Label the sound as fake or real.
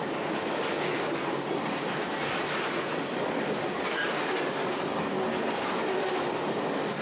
real